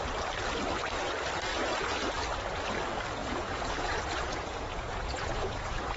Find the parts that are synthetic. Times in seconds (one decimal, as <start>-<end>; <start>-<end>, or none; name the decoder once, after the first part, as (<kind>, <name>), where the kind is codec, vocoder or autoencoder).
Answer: 3.2-6.0 (vocoder, Vocos)